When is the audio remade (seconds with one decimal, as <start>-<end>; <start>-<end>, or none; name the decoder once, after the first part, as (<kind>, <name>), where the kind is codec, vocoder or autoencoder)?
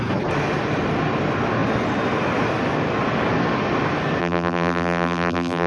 4.2-5.7 (vocoder, BigVGAN v2)